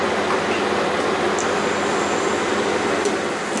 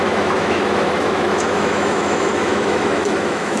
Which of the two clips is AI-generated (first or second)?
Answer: second